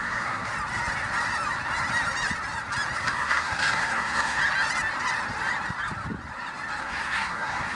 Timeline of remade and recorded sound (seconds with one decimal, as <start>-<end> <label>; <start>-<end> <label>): 0.0-0.5 remade; 0.5-3.0 recorded; 3.0-4.4 remade; 4.4-6.8 recorded; 6.8-7.8 remade